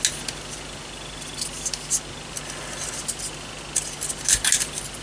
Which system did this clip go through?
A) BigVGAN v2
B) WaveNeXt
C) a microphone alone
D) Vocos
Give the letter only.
C